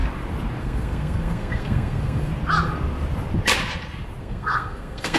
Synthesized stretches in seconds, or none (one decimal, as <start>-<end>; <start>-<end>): 0.6-2.3; 4.2-5.2